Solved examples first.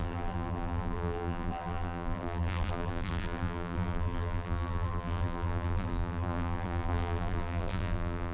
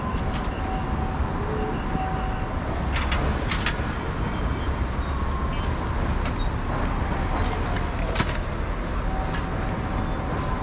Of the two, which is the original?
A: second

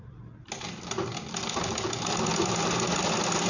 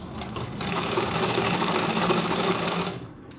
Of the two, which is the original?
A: first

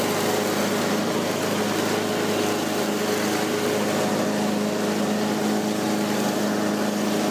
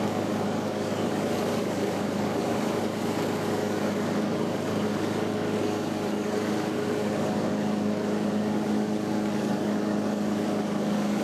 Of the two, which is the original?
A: first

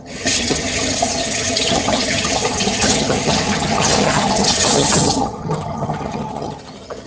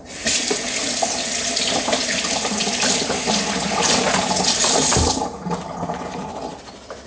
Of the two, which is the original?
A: second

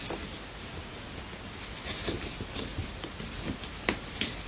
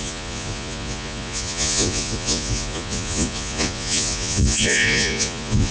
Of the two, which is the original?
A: first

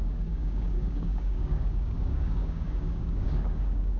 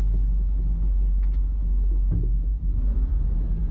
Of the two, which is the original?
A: second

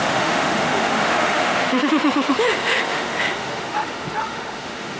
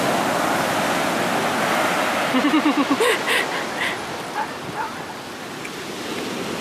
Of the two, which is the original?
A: second